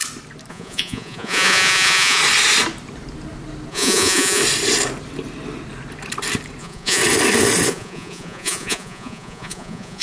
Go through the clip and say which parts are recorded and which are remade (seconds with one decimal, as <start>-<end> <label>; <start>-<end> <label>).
0.0-0.5 recorded; 0.5-2.2 remade; 2.2-3.7 recorded; 3.7-4.4 remade; 4.4-6.6 recorded; 6.6-7.0 remade; 7.0-7.7 recorded; 7.7-10.0 remade